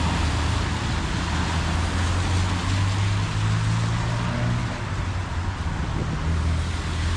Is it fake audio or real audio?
real